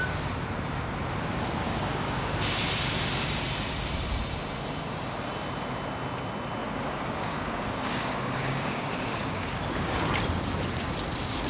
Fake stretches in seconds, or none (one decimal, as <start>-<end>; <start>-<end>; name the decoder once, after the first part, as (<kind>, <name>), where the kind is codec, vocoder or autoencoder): 1.6-2.6 (codec, DAC); 6.6-10.1